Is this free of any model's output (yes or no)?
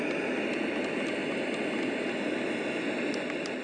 yes